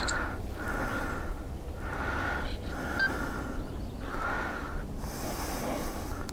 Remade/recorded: recorded